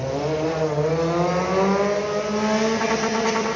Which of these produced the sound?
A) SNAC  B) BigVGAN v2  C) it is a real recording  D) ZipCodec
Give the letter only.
C